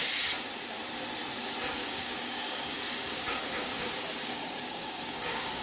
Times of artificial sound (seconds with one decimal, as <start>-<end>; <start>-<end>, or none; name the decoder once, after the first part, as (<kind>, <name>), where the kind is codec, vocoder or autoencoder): 1.8-5.6 (codec, DAC)